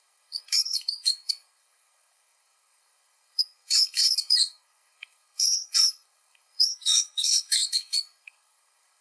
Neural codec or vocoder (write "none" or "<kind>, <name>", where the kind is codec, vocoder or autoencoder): codec, SNAC